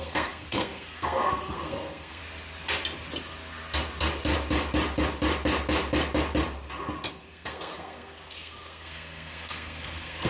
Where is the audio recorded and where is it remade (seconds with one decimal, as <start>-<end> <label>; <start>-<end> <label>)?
0.0-2.2 remade; 2.2-7.1 recorded; 7.1-10.3 remade